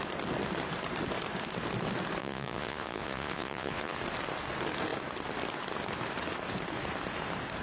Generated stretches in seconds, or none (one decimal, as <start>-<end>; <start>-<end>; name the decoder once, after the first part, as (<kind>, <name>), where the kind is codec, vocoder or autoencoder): 2.2-4.0 (vocoder, Vocos)